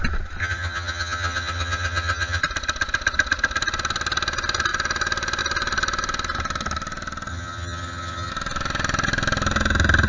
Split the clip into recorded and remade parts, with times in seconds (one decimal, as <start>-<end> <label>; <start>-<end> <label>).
0.0-0.4 recorded; 0.4-2.4 remade; 2.4-7.3 recorded; 7.3-8.3 remade; 8.3-10.1 recorded